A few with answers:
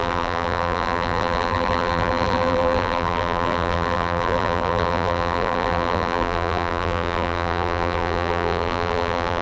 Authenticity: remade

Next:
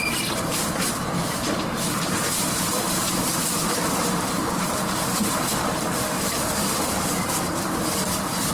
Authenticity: remade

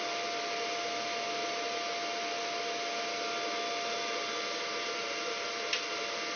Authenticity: recorded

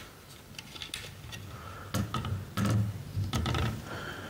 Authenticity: recorded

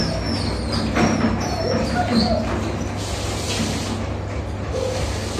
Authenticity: recorded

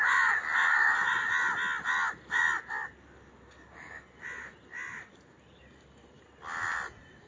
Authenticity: recorded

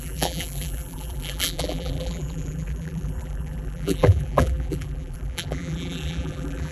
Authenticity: remade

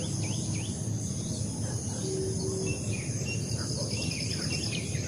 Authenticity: recorded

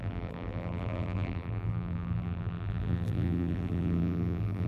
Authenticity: remade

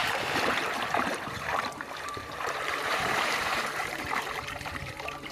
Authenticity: remade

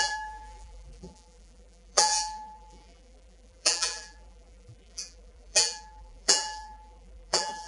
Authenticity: remade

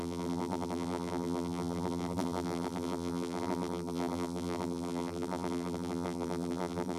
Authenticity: remade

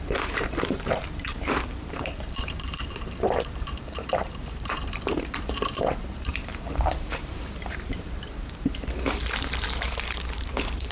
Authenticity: remade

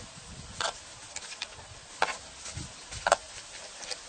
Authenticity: recorded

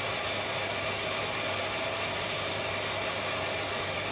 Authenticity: recorded